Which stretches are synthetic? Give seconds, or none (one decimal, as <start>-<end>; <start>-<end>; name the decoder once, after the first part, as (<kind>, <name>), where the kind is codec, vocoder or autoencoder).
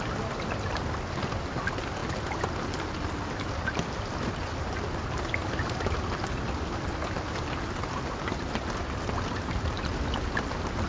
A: none